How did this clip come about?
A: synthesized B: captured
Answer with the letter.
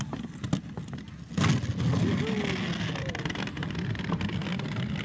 B